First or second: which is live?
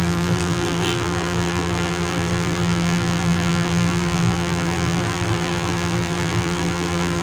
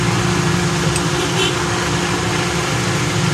second